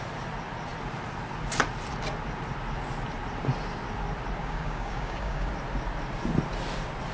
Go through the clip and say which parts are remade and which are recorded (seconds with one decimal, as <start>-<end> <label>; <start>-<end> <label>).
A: 0.0-4.4 recorded; 4.4-5.5 remade; 5.5-7.1 recorded